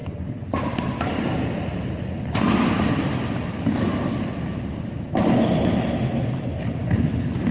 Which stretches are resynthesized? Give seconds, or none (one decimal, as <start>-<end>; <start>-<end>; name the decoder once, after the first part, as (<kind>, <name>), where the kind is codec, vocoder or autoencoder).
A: 0.0-1.5 (vocoder, BigVGAN v2)